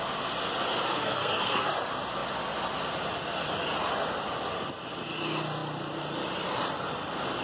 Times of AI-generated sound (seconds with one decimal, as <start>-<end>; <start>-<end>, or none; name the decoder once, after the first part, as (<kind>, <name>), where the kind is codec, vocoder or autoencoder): 0.9-1.7 (codec, SNAC)